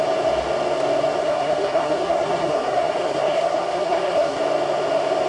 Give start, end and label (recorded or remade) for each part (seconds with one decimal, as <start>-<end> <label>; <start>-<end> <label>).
0.0-1.2 recorded; 1.2-4.4 remade; 4.4-5.3 recorded